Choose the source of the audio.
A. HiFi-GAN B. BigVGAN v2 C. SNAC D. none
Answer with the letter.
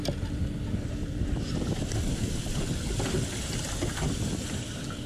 D